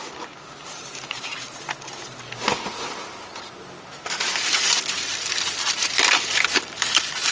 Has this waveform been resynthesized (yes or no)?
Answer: no